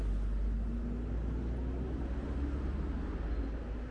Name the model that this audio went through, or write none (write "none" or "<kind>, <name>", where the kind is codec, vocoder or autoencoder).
none